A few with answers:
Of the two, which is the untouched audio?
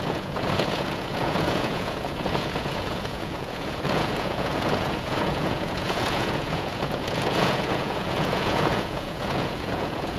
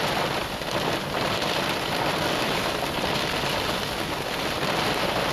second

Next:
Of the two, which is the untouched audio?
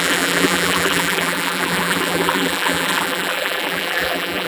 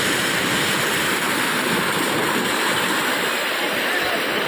second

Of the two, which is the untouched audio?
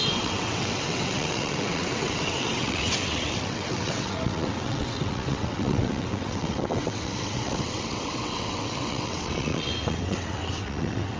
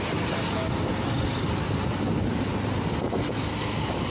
second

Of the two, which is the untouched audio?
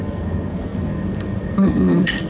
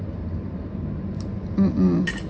second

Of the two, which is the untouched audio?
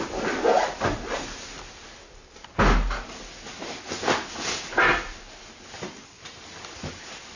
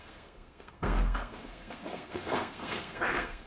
first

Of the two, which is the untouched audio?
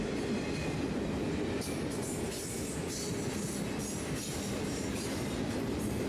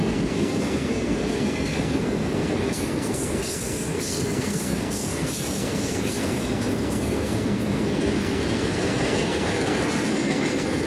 first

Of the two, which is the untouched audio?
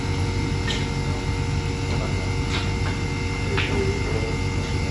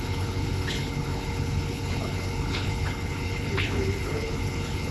first